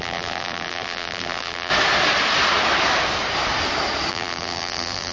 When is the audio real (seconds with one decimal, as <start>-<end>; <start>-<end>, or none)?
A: 1.7-4.1